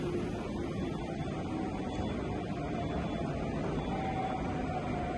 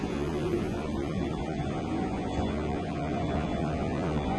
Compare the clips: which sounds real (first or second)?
first